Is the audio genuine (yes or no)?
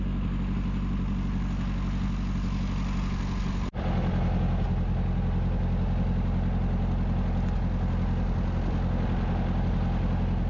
yes